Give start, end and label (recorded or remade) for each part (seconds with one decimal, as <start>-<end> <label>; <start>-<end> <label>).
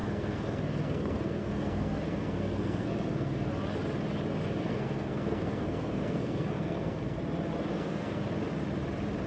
0.0-3.5 remade; 3.5-4.6 recorded; 4.6-7.2 remade; 7.2-7.7 recorded; 7.7-8.2 remade; 8.2-9.3 recorded